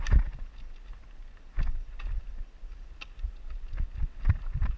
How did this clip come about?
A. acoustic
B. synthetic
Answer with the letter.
A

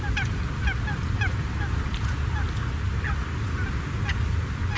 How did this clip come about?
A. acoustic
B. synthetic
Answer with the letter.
A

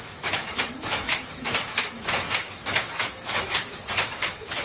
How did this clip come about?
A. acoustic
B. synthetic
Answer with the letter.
B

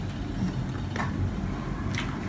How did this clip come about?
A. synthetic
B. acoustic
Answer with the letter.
B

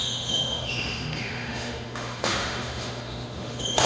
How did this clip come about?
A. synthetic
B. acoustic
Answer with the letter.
A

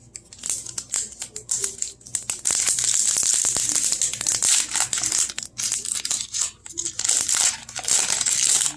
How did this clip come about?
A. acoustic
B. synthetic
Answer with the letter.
A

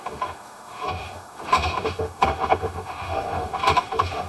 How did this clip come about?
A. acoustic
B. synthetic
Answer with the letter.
B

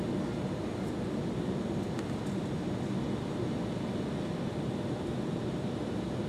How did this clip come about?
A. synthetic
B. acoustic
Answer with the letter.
B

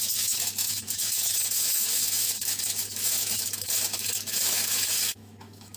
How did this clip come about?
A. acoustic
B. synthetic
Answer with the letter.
B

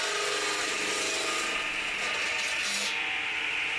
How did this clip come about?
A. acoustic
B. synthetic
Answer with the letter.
A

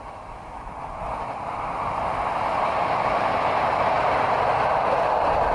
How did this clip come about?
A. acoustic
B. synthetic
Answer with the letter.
A